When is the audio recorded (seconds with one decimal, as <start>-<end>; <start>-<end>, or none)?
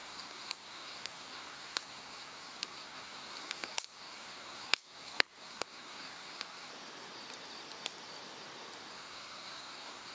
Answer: 6.7-8.9